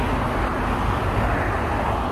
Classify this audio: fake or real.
real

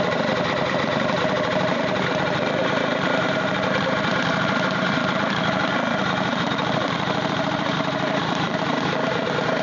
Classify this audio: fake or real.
fake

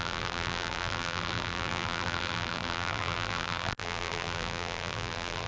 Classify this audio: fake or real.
fake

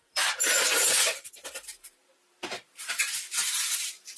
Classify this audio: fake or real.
fake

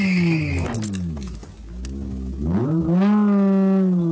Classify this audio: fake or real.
real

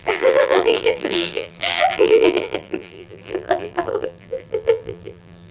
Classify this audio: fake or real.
fake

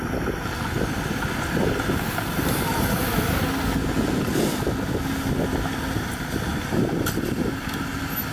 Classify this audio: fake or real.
real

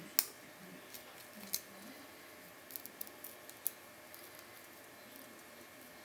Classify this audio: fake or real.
real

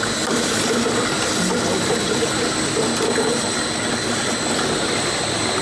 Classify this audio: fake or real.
real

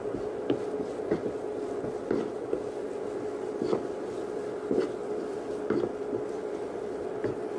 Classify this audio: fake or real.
real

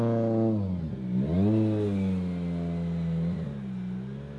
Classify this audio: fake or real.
real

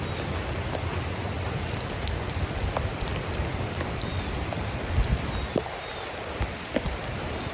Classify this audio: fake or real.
real